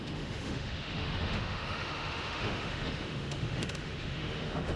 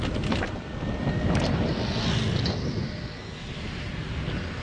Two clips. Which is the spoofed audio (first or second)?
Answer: first